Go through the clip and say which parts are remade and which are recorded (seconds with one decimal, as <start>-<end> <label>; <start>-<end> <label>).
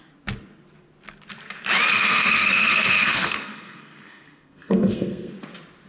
0.0-1.9 recorded; 1.9-5.3 remade; 5.3-5.9 recorded